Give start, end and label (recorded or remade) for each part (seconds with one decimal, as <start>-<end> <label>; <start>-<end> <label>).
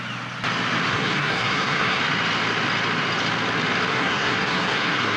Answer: 0.0-0.9 recorded; 0.9-2.0 remade; 2.0-3.9 recorded; 3.9-5.2 remade